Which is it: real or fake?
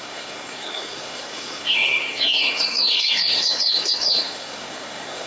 fake